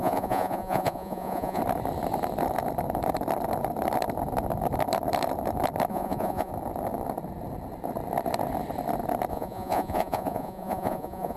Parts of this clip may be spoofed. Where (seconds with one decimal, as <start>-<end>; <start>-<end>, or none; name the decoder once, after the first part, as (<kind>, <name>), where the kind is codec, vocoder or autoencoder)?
0.0-1.6 (vocoder, Vocos); 5.9-6.5; 9.3-11.4